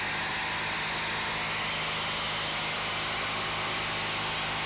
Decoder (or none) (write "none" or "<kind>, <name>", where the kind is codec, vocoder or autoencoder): none